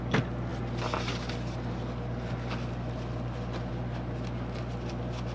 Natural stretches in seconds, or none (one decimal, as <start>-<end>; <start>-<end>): 0.0-5.3